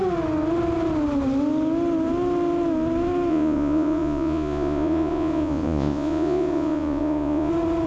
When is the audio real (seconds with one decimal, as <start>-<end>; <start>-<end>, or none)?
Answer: 0.0-3.3; 7.5-7.9